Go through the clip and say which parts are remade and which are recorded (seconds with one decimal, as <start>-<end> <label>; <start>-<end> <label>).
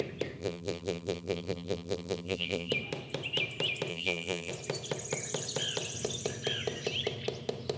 0.0-0.4 recorded; 0.4-2.7 remade; 2.7-3.9 recorded; 3.9-4.5 remade; 4.5-7.8 recorded